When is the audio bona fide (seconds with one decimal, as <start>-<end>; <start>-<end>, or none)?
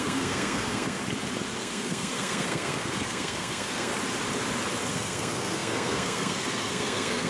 1.0-1.6; 3.9-4.9